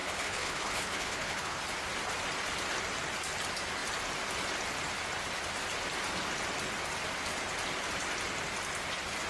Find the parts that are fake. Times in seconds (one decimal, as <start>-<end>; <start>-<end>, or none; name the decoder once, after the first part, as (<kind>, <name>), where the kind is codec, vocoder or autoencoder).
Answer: 0.0-1.6 (codec, HILCodec)